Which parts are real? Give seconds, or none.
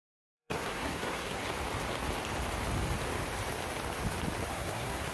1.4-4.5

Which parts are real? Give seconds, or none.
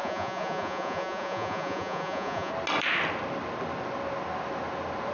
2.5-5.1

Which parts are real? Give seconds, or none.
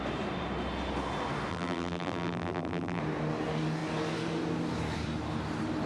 0.0-1.5; 3.0-5.9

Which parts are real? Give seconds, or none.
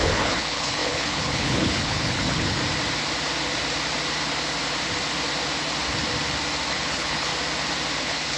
2.6-6.7; 7.3-8.0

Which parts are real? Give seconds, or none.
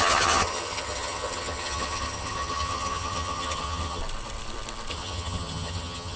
4.0-4.9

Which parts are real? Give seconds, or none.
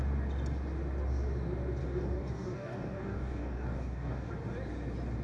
0.0-1.8; 4.3-5.2